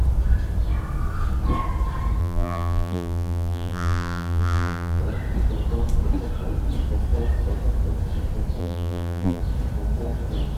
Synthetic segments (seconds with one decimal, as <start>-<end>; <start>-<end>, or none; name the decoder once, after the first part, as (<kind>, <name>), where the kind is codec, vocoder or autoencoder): 2.2-5.0 (vocoder, BigVGAN v2); 8.6-9.4

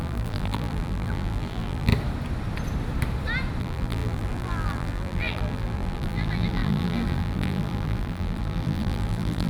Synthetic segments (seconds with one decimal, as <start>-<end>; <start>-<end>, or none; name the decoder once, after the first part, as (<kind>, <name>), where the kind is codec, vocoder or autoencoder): 0.0-1.9 (vocoder, BigVGAN v2); 3.6-9.5

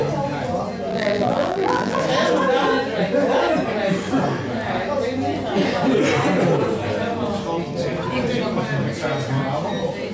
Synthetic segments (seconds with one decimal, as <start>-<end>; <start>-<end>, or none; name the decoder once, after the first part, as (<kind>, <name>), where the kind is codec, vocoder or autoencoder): 0.9-2.0 (vocoder, BigVGAN v2)

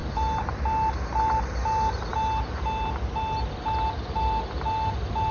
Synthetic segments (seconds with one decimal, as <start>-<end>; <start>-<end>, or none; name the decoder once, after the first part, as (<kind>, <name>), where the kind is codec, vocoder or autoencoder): none

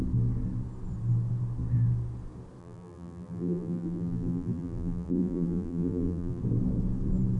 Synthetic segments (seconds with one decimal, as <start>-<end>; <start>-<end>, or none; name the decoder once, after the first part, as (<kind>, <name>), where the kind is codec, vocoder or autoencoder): 2.6-6.4 (vocoder, BigVGAN v2)

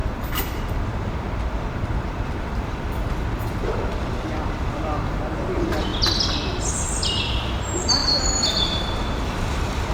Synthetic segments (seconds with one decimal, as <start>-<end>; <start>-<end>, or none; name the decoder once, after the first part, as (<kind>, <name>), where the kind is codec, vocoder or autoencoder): 0.0-5.9 (vocoder, BigVGAN v2); 7.4-9.9

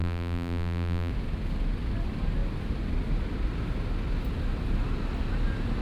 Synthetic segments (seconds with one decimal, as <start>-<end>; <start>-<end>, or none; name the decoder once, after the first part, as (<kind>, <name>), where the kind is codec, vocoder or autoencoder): 0.0-1.1 (vocoder, BigVGAN v2)